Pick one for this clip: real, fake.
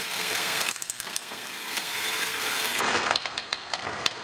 fake